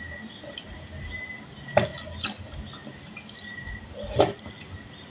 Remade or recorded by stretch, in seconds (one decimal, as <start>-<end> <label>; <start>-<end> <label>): 0.0-5.1 recorded